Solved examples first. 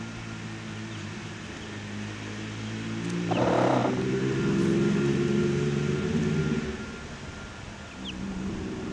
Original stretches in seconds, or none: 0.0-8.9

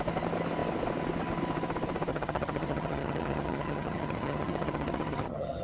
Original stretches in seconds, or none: 0.0-2.1

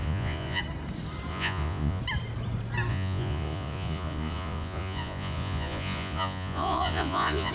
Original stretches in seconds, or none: 0.6-1.3; 2.0-2.9

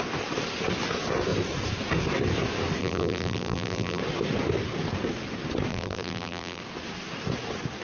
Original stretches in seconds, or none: 0.0-2.8; 4.0-5.7; 6.6-7.8

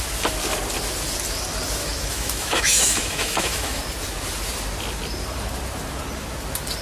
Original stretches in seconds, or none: 0.0-1.8; 3.8-6.8

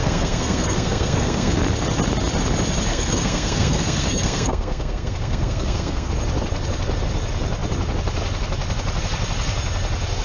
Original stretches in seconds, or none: 1.6-2.9; 6.1-10.2

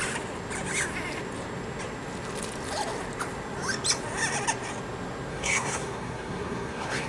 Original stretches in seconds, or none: 0.0-5.3